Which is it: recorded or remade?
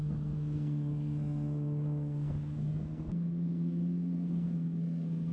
remade